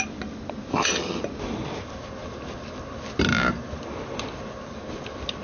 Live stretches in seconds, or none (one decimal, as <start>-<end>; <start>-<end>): 0.0-0.7; 1.2-5.4